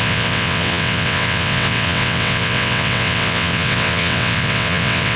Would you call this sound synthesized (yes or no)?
yes